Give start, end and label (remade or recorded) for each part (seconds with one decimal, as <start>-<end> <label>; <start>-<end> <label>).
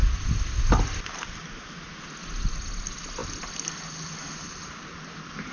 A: 0.0-5.5 recorded